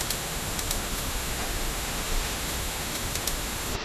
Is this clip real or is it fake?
fake